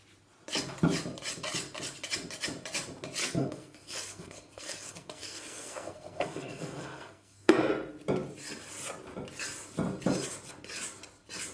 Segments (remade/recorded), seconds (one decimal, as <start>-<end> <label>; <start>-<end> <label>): 0.0-3.2 recorded; 3.2-7.7 remade; 7.7-11.5 recorded